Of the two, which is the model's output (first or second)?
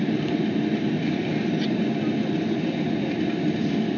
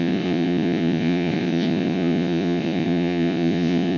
second